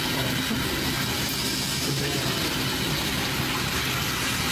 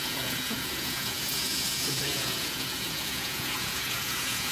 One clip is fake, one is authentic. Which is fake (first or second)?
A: second